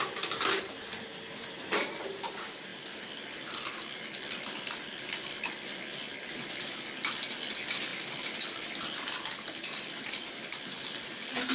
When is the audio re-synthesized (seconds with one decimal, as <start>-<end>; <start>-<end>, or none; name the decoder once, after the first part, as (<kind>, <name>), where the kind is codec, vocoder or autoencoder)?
none